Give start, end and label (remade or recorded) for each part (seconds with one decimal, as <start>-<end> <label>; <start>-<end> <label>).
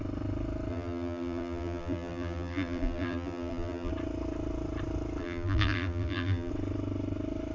0.0-0.7 recorded; 0.7-3.9 remade; 3.9-5.2 recorded; 5.2-6.5 remade; 6.5-7.5 recorded